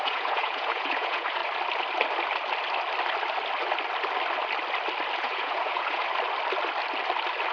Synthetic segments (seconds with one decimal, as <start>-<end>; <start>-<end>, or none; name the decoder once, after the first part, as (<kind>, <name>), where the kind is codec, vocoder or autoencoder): 0.0-1.4 (vocoder, Vocos); 5.2-6.1